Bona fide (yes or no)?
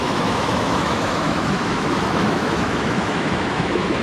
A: no